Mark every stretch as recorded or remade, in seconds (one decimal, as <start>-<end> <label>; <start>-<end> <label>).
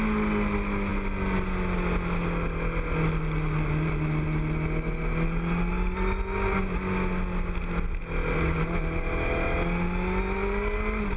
0.0-11.2 recorded